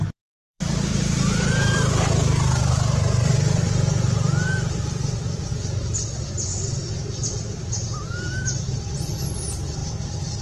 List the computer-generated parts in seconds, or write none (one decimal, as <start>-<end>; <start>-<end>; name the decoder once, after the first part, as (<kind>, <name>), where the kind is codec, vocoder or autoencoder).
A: 0.0-10.4 (vocoder, BigVGAN v2)